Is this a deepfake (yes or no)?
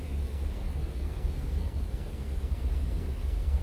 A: yes